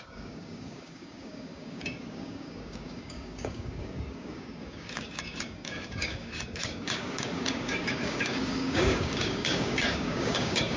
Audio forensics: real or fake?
fake